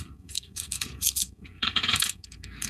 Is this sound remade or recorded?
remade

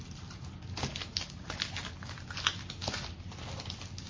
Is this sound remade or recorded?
recorded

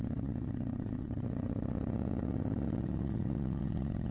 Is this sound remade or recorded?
remade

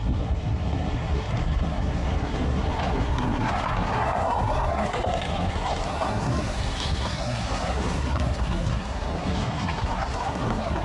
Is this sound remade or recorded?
remade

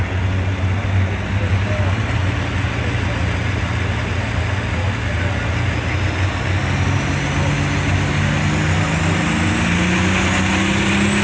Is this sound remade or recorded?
recorded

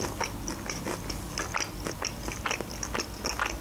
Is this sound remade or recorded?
recorded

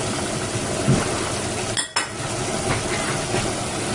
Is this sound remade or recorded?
recorded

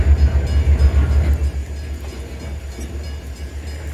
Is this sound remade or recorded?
recorded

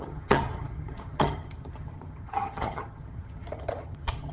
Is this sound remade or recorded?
remade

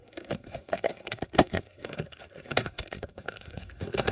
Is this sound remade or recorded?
remade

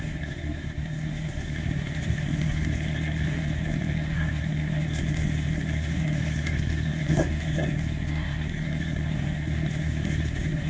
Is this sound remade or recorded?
remade